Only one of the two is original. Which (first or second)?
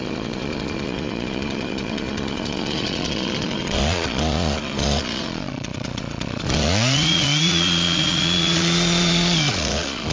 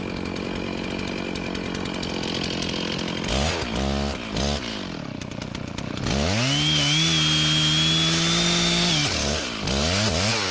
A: second